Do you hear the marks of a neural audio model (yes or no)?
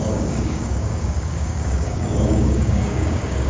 yes